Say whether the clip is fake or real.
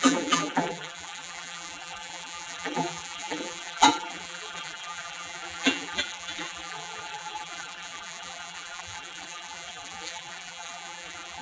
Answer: fake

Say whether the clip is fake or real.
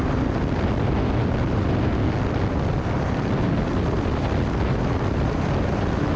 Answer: real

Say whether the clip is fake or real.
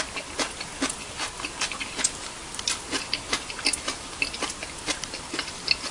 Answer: real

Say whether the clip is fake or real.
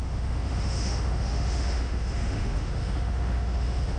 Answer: fake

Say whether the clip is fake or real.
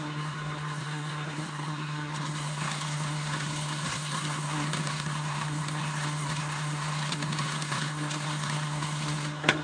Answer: fake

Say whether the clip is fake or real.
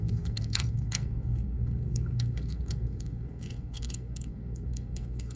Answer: fake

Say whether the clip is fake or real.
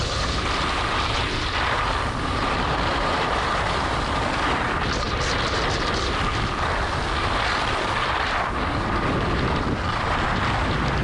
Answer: real